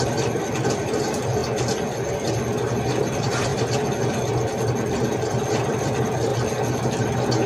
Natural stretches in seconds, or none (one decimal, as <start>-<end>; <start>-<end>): 1.4-3.0; 3.5-5.1; 6.3-7.0